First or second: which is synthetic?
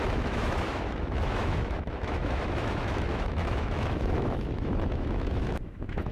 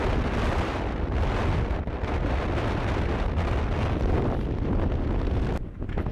first